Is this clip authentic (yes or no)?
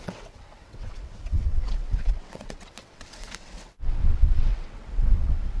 no